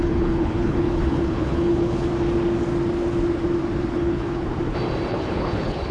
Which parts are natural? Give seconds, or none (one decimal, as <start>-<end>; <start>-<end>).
2.1-3.9; 4.5-5.1

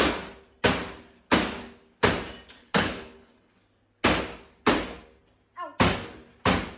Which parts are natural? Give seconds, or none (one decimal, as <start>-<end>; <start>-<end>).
0.0-2.6; 3.5-6.8

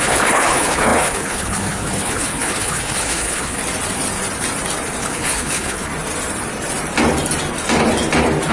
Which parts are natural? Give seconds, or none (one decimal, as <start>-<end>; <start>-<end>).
3.6-5.0; 5.9-8.5